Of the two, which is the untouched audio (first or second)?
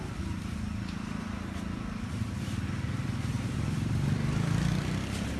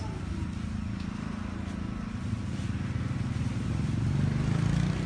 second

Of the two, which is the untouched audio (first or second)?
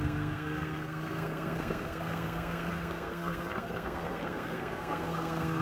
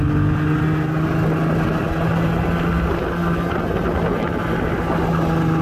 second